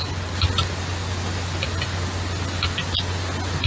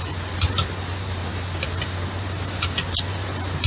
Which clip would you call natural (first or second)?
first